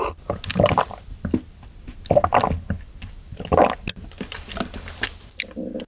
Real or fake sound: real